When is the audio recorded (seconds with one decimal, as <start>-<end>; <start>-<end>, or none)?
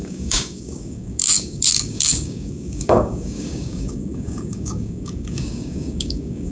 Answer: none